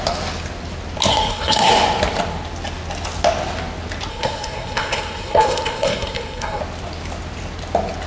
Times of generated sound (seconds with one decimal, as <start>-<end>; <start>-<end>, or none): 1.1-1.7; 4.1-6.6